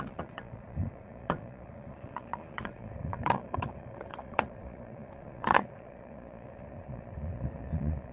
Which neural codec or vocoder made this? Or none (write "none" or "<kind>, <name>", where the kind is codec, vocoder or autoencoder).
vocoder, Vocos